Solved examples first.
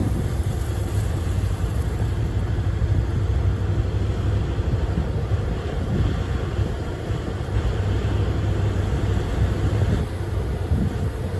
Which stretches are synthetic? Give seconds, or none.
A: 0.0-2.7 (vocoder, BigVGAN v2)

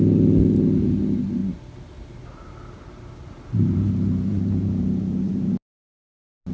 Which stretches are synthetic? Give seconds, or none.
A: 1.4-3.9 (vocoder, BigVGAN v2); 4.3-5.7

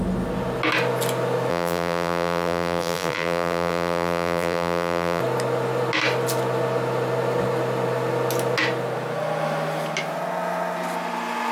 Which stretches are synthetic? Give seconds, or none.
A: 1.5-5.2 (vocoder, BigVGAN v2)

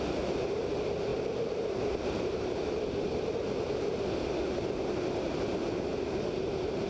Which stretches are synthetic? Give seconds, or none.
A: 1.1-4.0 (vocoder, BigVGAN v2); 5.9-6.9

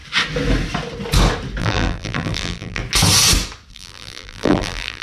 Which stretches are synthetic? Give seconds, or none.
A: 1.6-2.8 (vocoder, BigVGAN v2); 3.7-5.0

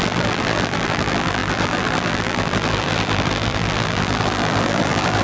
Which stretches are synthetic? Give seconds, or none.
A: 0.0-5.2 (vocoder, BigVGAN v2)

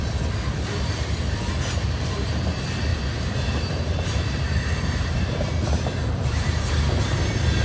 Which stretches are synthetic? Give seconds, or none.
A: 2.9-6.7 (vocoder, BigVGAN v2)

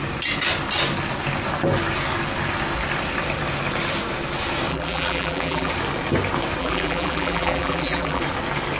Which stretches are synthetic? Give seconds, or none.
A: 4.7-5.7 (vocoder, BigVGAN v2); 6.6-8.2